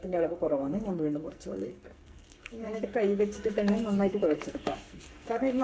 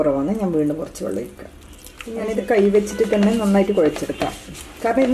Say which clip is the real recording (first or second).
second